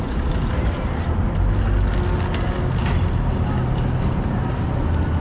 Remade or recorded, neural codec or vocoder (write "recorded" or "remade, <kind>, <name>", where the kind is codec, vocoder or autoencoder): recorded